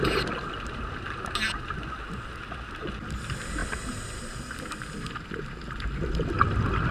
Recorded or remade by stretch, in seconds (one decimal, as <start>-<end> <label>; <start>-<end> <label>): 0.0-6.9 recorded